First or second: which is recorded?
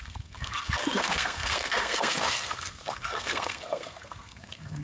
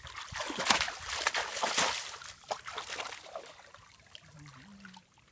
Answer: second